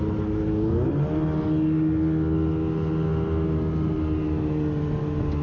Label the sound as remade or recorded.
recorded